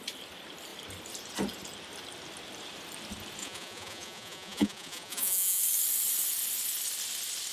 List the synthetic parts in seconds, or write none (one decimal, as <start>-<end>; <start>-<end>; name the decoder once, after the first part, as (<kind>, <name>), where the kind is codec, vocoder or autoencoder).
3.4-5.6 (vocoder, Vocos)